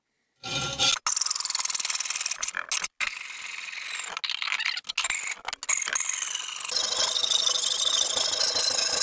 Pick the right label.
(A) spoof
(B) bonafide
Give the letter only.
B